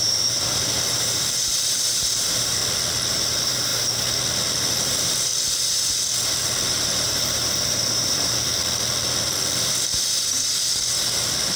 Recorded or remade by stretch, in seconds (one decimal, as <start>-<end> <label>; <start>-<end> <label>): 0.0-2.6 remade; 2.6-3.1 recorded; 3.1-3.7 remade; 3.7-4.8 recorded; 4.8-5.3 remade; 5.3-6.7 recorded; 6.7-8.5 remade; 8.5-11.2 recorded; 11.2-11.6 remade